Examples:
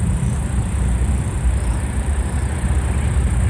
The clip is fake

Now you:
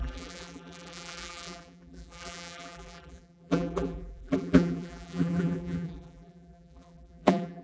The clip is fake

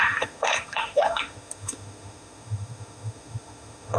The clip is fake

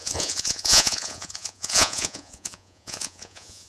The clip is fake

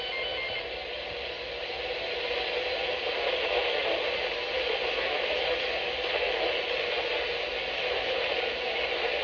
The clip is real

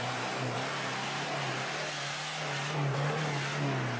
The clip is real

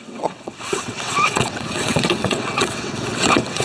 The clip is fake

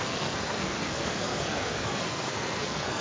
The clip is fake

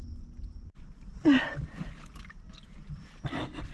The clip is real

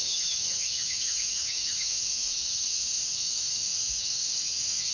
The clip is fake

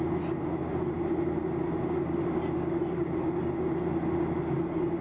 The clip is real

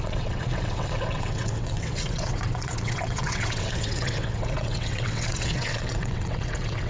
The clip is fake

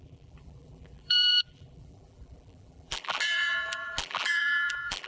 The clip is fake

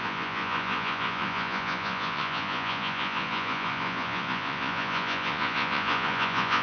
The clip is fake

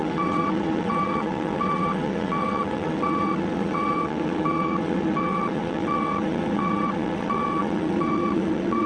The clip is fake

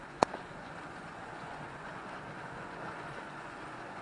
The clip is fake